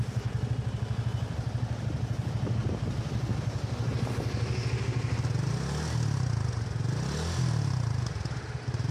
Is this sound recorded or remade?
recorded